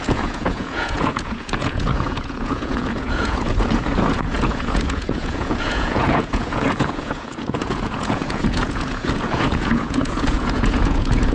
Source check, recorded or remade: remade